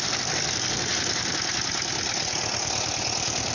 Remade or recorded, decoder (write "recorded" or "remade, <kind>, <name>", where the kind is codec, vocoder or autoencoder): recorded